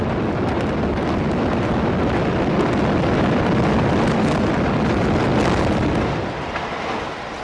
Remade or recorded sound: recorded